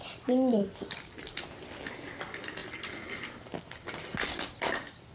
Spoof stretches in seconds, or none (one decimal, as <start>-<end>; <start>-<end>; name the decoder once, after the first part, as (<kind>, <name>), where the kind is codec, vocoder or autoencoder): 0.6-1.6 (vocoder, BigVGAN v2)